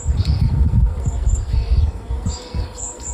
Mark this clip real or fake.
fake